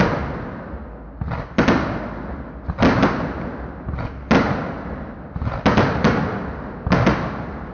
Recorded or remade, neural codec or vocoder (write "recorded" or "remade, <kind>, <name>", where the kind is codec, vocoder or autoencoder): recorded